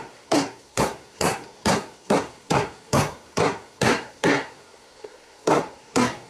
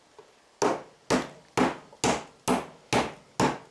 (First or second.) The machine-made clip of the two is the first